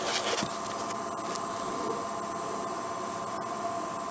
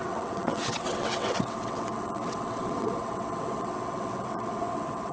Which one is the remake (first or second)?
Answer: second